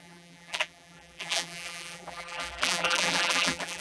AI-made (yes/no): yes